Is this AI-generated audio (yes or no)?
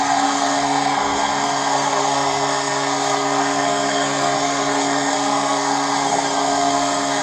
yes